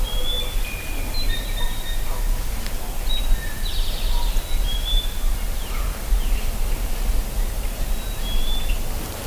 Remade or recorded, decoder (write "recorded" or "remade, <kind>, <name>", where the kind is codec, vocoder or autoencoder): recorded